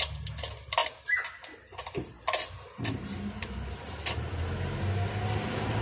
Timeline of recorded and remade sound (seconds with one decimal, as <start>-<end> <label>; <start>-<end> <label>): 0.0-5.8 recorded